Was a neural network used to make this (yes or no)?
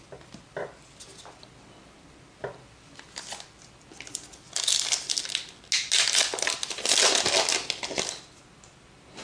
no